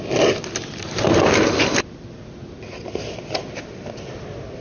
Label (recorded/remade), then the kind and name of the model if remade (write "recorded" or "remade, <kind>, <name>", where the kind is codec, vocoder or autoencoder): recorded